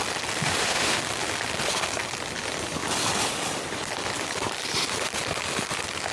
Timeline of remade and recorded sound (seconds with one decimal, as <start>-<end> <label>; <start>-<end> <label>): 0.0-0.4 recorded; 0.4-1.0 remade; 1.0-6.1 recorded

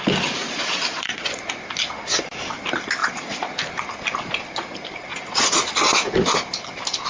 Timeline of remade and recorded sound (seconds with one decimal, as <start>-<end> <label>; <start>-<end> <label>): 0.0-0.4 recorded; 0.4-1.4 remade; 1.4-3.0 recorded; 3.0-3.6 remade; 3.6-5.1 recorded; 5.1-5.6 remade; 5.6-7.1 recorded

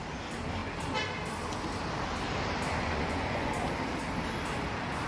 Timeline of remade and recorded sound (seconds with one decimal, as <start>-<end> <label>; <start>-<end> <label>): 0.0-2.8 recorded; 2.8-3.5 remade; 3.5-5.1 recorded